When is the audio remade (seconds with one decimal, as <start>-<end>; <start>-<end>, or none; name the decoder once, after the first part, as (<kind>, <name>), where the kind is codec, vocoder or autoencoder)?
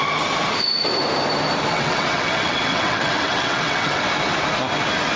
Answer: 1.7-4.0 (vocoder, WaveNeXt)